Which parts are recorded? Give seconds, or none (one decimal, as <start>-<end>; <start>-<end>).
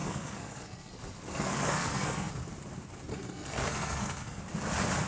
0.9-1.3; 2.3-3.1; 4.4-5.1